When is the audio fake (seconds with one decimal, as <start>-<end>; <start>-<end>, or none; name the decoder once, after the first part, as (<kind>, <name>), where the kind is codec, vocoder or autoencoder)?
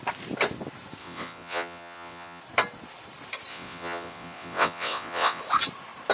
1.0-2.4 (vocoder, WaveNeXt); 3.5-5.4